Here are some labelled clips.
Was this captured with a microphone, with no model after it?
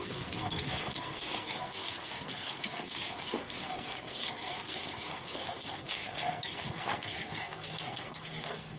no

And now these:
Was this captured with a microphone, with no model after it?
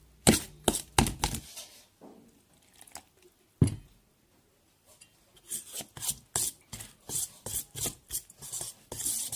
yes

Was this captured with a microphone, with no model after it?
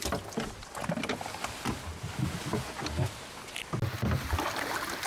yes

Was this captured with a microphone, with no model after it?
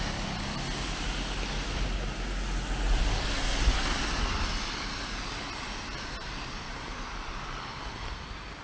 yes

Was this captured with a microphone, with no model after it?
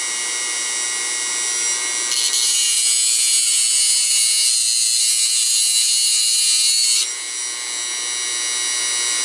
yes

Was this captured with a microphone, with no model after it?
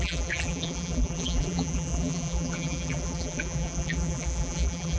no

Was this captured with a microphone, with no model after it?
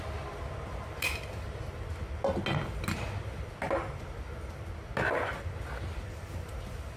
yes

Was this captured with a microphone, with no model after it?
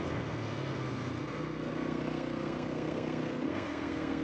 no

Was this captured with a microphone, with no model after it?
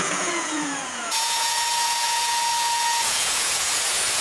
no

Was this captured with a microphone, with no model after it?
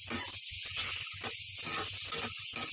yes